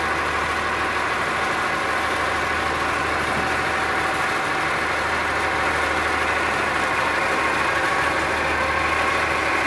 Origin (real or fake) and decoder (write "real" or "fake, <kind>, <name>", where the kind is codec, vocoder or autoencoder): real